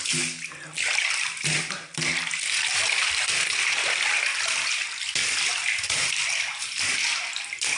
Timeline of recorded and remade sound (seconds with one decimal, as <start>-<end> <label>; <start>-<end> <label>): 0.0-7.8 recorded